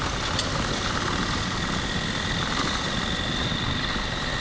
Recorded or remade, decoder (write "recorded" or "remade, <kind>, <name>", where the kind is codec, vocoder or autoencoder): recorded